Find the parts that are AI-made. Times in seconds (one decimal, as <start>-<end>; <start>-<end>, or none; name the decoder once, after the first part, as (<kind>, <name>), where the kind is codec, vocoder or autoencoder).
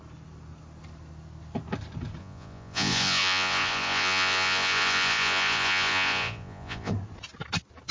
2.2-6.9 (vocoder, Vocos)